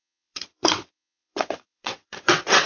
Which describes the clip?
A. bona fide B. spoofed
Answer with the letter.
B